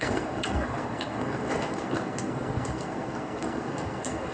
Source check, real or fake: fake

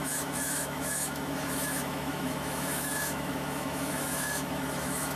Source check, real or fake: fake